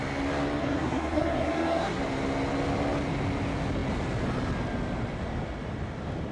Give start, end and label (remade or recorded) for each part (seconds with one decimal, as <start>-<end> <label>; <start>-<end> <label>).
0.0-0.6 recorded; 0.6-2.0 remade; 2.0-6.3 recorded

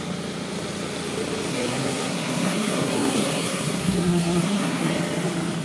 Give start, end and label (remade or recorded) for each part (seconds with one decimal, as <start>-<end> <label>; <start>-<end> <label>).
0.0-1.5 recorded; 1.5-4.9 remade; 4.9-5.6 recorded